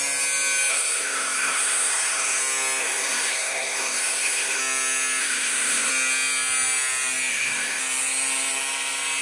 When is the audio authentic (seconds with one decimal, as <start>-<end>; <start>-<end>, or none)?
0.0-0.7; 2.4-2.8; 4.6-5.2; 5.9-7.3; 7.8-9.2